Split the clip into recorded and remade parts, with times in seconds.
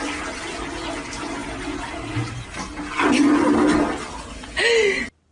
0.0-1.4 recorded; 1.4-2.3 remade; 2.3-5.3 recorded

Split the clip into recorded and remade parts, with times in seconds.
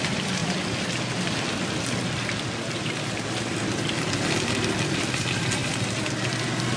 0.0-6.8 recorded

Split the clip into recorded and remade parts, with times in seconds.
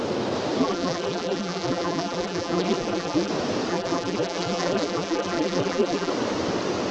0.0-0.6 recorded; 0.6-3.3 remade; 3.3-3.7 recorded; 3.7-6.1 remade; 6.1-6.9 recorded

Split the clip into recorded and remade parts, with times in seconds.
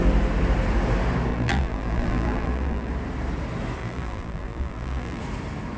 0.0-1.3 recorded; 1.3-2.9 remade; 2.9-3.8 recorded; 3.8-5.2 remade; 5.2-5.8 recorded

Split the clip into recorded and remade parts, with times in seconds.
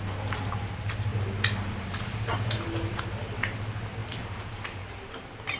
0.0-1.1 recorded; 1.1-3.0 remade; 3.0-4.0 recorded; 4.0-5.0 remade; 5.0-5.6 recorded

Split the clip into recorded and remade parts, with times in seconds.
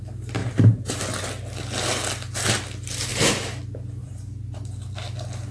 0.0-0.4 recorded; 0.4-1.0 remade; 1.0-3.1 recorded; 3.1-3.6 remade; 3.6-4.0 recorded; 4.0-4.9 remade; 4.9-5.5 recorded